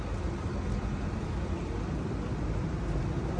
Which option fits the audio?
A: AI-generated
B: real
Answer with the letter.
B